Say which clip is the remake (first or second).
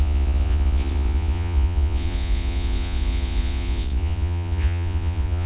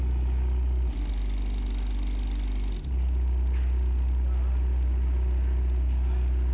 first